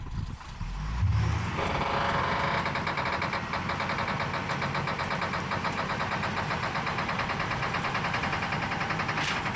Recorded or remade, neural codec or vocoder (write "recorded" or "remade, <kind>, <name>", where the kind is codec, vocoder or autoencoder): recorded